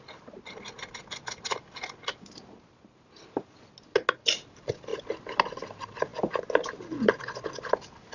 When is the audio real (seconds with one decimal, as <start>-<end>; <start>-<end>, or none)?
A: 0.0-8.1